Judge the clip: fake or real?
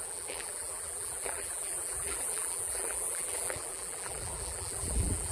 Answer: fake